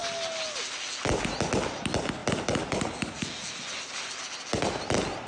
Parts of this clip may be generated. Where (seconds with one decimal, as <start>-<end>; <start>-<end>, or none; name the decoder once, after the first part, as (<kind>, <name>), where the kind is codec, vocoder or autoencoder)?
none